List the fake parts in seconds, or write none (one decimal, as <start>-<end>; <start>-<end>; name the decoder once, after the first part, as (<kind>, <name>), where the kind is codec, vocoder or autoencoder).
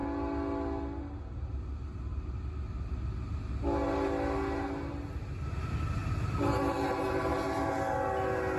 none